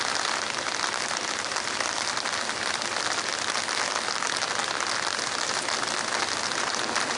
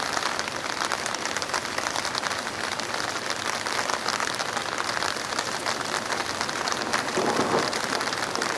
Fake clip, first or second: second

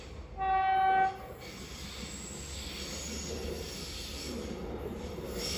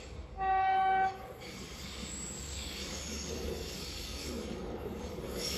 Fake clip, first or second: second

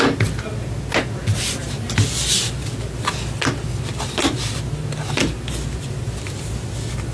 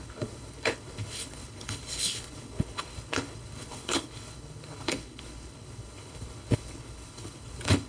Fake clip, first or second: second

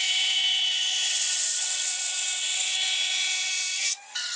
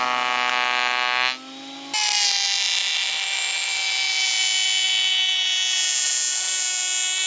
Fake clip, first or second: first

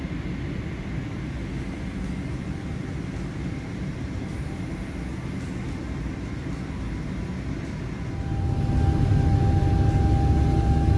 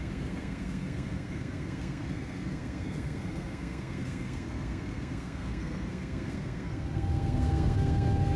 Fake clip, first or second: second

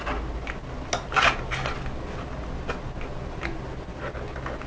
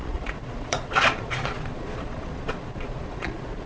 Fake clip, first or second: second